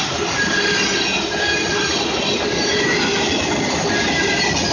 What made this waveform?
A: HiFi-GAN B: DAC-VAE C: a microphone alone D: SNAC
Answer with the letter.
C